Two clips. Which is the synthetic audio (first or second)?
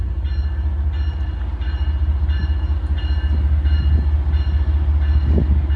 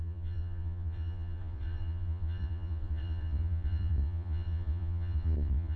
second